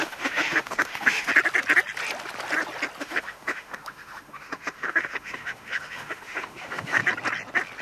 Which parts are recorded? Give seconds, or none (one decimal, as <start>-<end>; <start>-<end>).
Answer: 1.3-3.0; 7.0-7.8